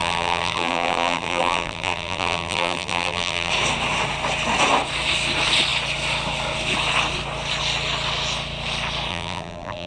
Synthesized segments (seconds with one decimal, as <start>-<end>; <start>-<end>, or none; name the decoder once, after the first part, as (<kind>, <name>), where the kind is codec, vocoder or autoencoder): 0.0-3.5 (vocoder, BigVGAN v2); 9.1-9.9